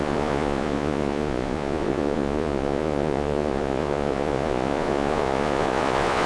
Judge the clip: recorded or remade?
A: remade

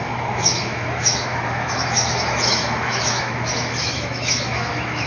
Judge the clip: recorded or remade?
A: remade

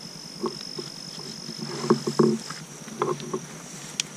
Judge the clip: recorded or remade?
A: recorded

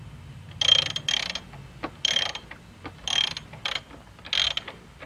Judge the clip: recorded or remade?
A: recorded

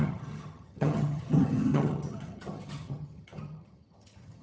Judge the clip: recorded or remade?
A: remade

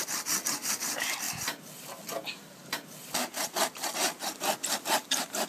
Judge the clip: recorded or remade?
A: recorded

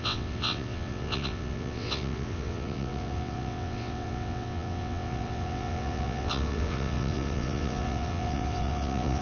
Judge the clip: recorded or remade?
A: remade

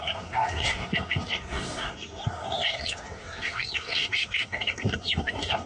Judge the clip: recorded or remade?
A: remade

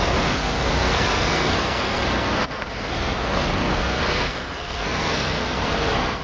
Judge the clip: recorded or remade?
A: remade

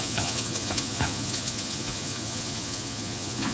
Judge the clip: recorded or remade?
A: remade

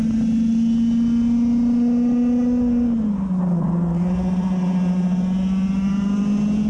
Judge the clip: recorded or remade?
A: recorded